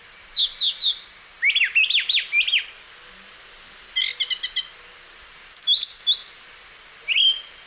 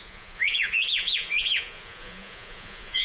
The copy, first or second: second